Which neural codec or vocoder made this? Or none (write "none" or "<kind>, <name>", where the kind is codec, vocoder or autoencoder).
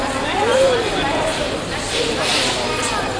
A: vocoder, BigVGAN v2